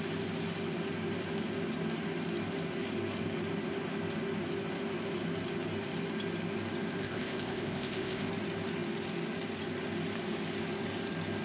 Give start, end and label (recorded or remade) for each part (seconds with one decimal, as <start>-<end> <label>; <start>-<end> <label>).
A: 0.0-7.0 recorded; 7.0-8.3 remade; 8.3-11.4 recorded